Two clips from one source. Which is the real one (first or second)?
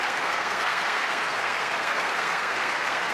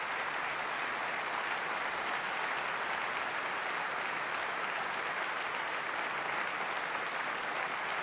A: second